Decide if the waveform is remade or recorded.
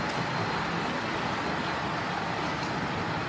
recorded